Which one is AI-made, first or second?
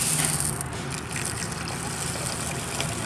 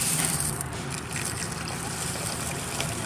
second